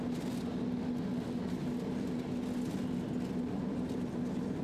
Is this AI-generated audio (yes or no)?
no